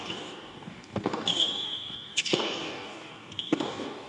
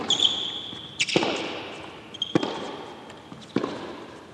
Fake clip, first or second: first